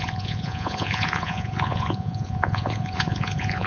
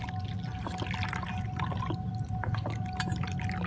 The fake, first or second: first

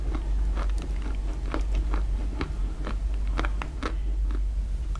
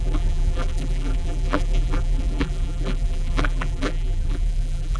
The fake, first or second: second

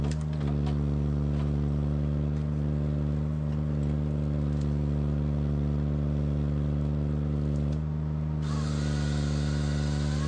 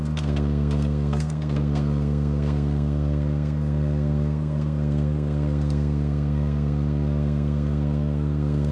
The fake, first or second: second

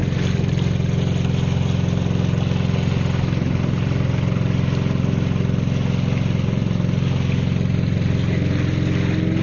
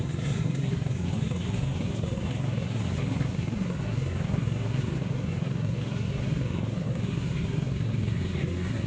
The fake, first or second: second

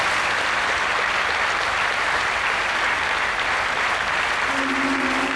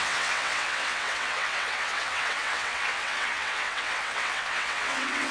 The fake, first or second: second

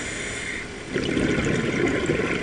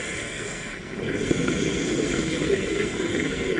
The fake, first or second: second